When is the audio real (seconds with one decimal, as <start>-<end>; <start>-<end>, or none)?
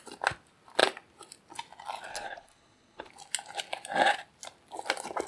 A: 0.0-2.1; 3.1-5.3